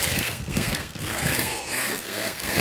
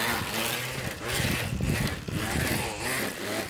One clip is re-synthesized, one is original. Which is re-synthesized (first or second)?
first